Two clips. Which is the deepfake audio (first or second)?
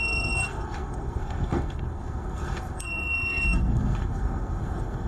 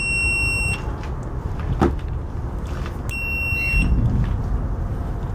first